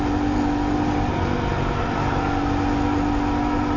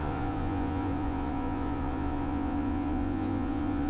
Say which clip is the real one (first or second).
first